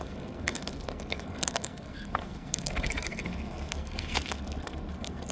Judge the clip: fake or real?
fake